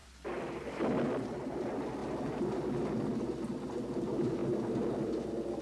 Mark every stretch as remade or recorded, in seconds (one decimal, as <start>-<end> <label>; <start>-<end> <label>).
0.0-5.6 recorded